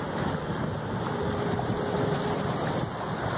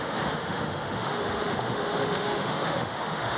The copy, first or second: second